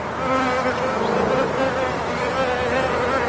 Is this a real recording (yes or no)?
yes